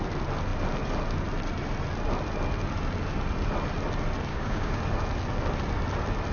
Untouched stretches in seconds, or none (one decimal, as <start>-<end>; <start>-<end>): 0.0-4.3; 4.8-6.3